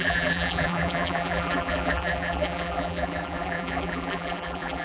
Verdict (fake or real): fake